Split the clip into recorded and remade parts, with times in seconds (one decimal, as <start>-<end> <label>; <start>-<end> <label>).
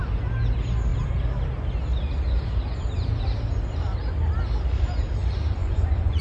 0.0-5.6 recorded; 5.6-6.2 remade